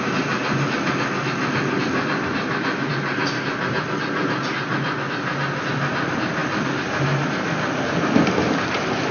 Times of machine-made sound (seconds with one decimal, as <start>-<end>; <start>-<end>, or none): none